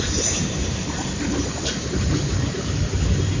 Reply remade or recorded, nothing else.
recorded